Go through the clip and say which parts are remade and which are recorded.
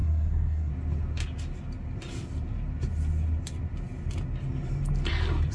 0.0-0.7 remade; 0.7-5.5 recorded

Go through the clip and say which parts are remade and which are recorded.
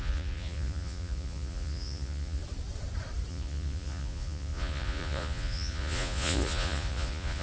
0.0-2.4 remade; 2.4-3.3 recorded; 3.3-7.4 remade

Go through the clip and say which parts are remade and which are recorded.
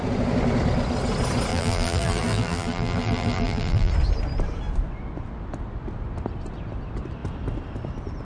0.0-1.5 recorded; 1.5-3.9 remade; 3.9-8.2 recorded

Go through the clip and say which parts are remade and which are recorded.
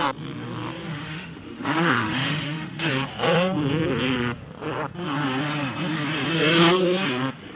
0.0-0.9 recorded; 0.9-2.9 remade; 2.9-7.6 recorded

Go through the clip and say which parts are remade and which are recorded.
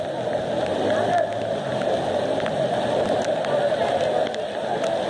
0.0-5.1 recorded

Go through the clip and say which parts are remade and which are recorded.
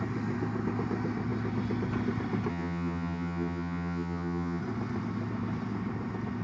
0.0-2.5 recorded; 2.5-4.6 remade; 4.6-6.4 recorded